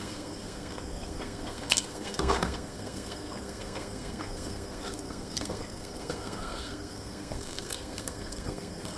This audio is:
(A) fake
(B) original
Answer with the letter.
A